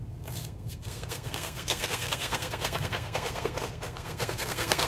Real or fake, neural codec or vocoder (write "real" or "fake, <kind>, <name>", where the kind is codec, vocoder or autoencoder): fake, codec, SNAC